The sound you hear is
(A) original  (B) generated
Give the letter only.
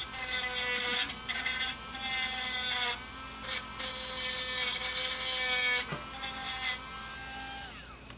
A